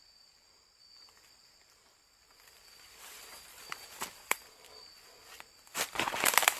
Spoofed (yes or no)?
yes